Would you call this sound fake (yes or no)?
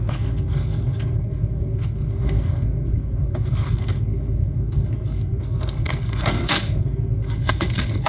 yes